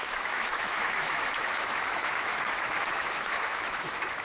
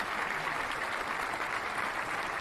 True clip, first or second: second